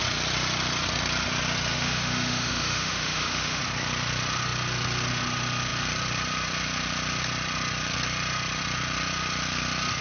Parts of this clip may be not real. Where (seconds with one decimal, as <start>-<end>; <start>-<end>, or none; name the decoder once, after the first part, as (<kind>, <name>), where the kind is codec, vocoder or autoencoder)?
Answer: 1.7-3.6 (autoencoder, DAC-VAE)